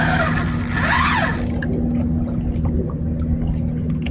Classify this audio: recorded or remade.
recorded